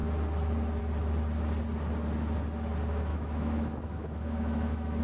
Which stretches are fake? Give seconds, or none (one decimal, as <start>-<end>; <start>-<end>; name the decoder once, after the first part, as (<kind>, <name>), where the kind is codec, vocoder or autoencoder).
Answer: 3.1-5.0 (autoencoder, DAC-VAE)